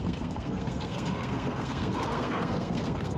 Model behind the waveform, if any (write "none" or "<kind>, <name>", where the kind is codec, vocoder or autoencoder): codec, SNAC